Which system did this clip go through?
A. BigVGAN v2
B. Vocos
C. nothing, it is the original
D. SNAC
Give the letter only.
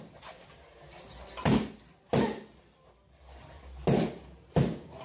C